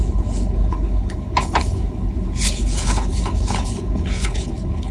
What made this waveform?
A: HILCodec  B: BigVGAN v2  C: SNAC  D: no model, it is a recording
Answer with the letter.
A